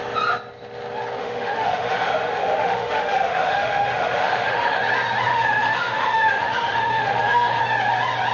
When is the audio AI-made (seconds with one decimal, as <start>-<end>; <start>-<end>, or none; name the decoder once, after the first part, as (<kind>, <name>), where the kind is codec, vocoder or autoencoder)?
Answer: 1.2-4.8 (autoencoder, DAC-VAE); 5.3-7.6